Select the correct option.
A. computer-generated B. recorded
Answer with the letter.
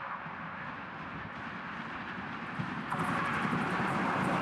B